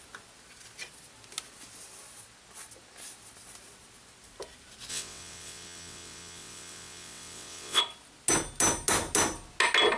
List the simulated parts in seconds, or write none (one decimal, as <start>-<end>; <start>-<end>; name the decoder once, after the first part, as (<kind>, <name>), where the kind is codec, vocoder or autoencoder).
4.9-7.8 (vocoder, WaveNeXt)